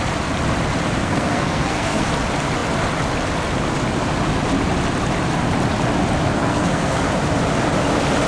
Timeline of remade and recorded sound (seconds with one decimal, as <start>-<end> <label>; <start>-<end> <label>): 0.0-1.0 recorded; 1.0-2.1 remade; 2.1-6.3 recorded; 6.3-7.1 remade; 7.1-8.3 recorded

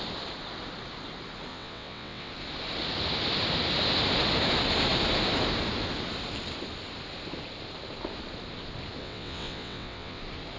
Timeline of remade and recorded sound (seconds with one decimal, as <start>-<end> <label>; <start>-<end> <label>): 0.0-1.5 recorded; 1.5-2.3 remade; 2.3-9.0 recorded; 9.0-10.2 remade; 10.2-10.6 recorded

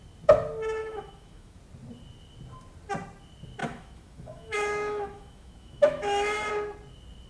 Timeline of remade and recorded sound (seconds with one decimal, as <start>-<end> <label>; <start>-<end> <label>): 0.0-0.8 recorded; 0.8-1.6 remade; 1.6-3.6 recorded; 3.6-6.5 remade; 6.5-7.3 recorded

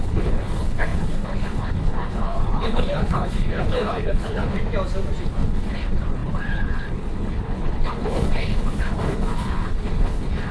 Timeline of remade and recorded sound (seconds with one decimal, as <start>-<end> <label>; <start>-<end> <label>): 0.0-4.6 remade; 4.6-5.2 recorded; 5.2-10.5 remade

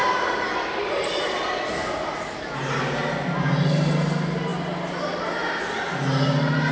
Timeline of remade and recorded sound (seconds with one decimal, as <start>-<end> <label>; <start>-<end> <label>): 0.0-6.7 recorded